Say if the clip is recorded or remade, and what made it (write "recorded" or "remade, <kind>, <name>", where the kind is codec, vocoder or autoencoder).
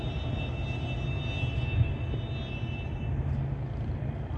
recorded